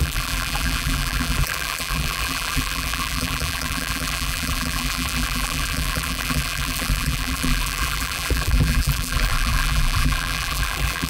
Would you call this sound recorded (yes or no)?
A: no